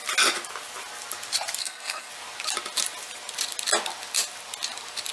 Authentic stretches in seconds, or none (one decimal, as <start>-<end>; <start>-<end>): 0.0-1.6; 2.1-5.1